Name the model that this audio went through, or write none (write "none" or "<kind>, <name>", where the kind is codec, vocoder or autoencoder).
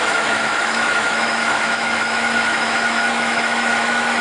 autoencoder, DAC-VAE